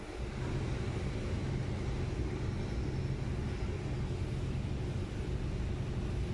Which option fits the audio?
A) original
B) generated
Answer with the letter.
A